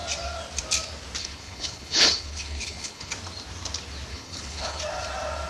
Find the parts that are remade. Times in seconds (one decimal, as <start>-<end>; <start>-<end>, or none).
1.2-3.1; 4.1-4.8